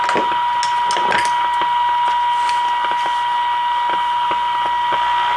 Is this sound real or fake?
real